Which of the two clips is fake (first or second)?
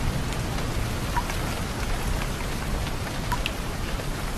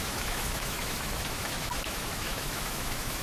second